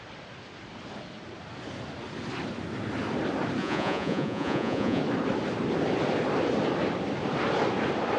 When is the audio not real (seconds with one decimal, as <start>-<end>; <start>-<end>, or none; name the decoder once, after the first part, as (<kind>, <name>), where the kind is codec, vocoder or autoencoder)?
3.6-5.0 (vocoder, Vocos)